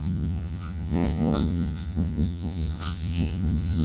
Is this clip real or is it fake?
fake